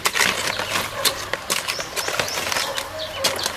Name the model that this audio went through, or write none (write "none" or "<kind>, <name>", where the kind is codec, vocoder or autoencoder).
none